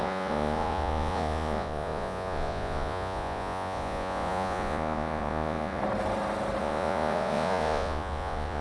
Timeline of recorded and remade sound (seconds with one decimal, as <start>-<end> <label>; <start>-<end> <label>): 0.0-5.8 remade; 5.8-6.6 recorded; 6.6-8.6 remade